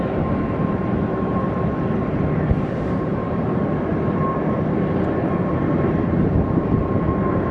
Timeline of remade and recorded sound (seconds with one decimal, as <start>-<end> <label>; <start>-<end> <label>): 0.0-1.7 remade; 1.7-2.6 recorded; 2.6-3.9 remade; 3.9-5.5 recorded; 5.5-7.5 remade